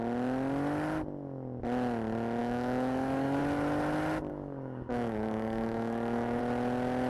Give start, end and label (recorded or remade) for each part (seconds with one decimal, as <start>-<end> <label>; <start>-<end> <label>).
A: 0.0-2.4 recorded; 2.4-3.4 remade; 3.4-4.3 recorded; 4.3-6.4 remade; 6.4-7.1 recorded